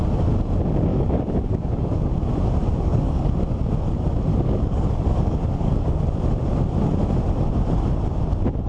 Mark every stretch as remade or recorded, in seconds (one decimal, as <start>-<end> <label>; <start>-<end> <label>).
0.0-0.9 recorded; 0.9-2.1 remade; 2.1-2.6 recorded; 2.6-3.2 remade; 3.2-4.3 recorded; 4.3-6.0 remade; 6.0-8.7 recorded